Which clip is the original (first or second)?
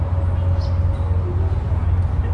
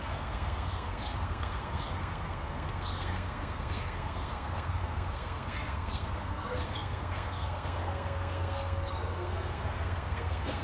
first